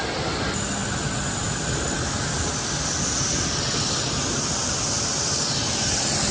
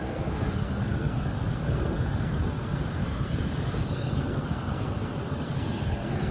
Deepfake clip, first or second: second